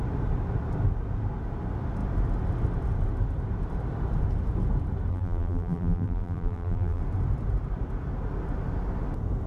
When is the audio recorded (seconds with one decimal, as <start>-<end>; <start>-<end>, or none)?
0.0-5.1; 7.0-9.5

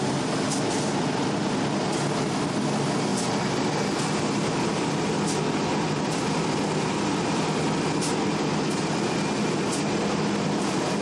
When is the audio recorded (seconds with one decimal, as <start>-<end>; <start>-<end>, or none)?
0.0-11.0

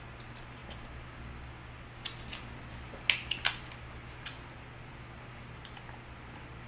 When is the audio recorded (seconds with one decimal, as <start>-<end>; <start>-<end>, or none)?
0.0-6.7

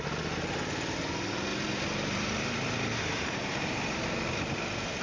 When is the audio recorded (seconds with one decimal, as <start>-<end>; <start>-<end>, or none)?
0.0-1.5; 4.0-5.0